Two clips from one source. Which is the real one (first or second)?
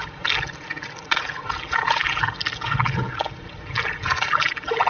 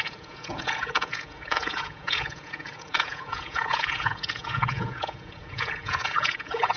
first